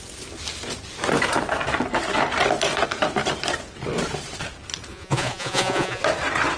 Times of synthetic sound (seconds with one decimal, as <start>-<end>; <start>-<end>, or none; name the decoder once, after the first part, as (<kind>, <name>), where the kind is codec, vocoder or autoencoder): 4.9-6.0 (vocoder, Vocos)